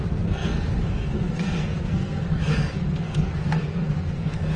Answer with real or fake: fake